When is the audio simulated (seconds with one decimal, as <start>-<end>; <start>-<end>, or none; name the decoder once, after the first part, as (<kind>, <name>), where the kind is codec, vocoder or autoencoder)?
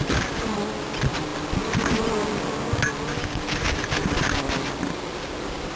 none